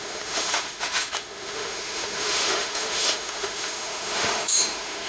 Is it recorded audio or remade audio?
remade